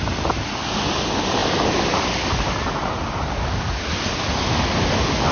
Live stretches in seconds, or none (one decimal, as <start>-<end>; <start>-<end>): 0.0-5.3